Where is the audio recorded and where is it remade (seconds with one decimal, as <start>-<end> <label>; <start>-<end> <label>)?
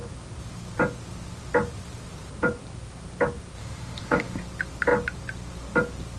0.0-3.6 recorded; 3.6-4.4 remade; 4.4-6.2 recorded